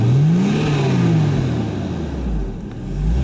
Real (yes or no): yes